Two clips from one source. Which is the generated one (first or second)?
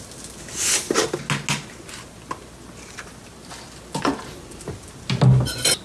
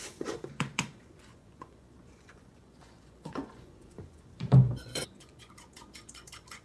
second